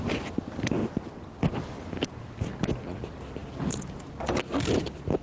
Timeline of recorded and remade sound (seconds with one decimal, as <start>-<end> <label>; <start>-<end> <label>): 0.0-5.2 recorded